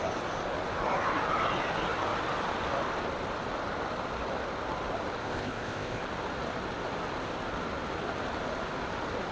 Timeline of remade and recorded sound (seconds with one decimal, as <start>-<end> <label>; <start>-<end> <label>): 0.0-5.2 recorded; 5.2-6.0 remade; 6.0-9.3 recorded